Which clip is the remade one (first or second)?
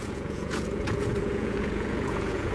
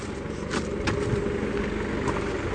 first